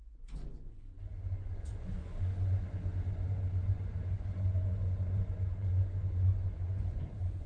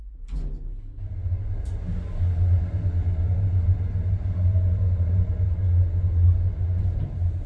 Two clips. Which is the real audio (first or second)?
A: second